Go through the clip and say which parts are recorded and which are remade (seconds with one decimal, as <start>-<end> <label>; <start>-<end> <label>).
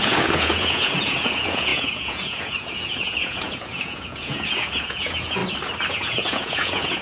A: 0.0-5.4 remade; 5.4-5.9 recorded; 5.9-7.0 remade